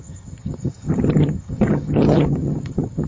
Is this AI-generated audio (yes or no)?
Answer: yes